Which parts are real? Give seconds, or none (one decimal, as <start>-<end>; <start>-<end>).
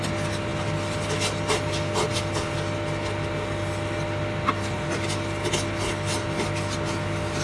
0.0-7.4